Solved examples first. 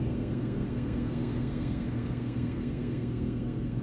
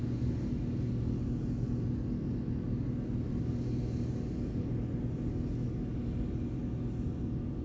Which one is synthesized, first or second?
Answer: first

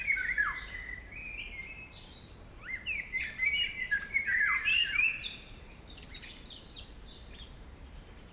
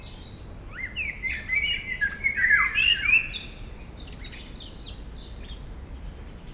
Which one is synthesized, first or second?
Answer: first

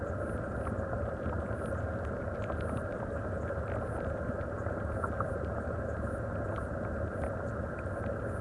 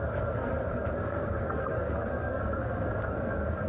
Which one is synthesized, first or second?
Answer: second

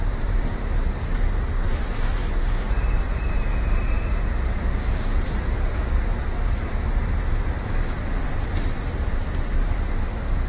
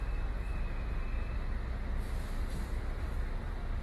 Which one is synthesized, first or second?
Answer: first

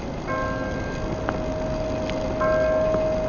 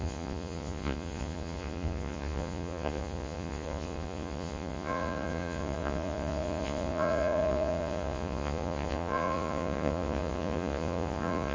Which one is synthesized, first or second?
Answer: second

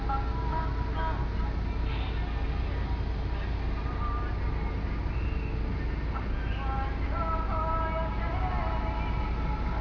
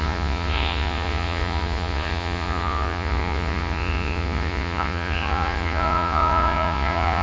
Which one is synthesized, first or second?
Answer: second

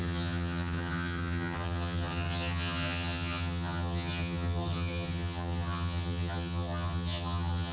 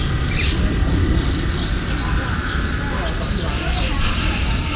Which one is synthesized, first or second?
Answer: first